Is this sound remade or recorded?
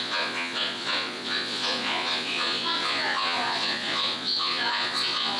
remade